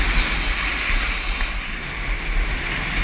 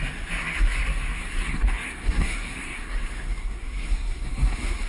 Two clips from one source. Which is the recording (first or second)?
first